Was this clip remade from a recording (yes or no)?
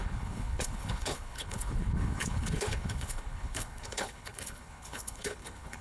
yes